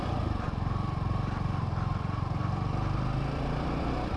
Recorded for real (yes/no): no